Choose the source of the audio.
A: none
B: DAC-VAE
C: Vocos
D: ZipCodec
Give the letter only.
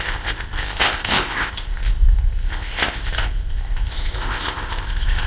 D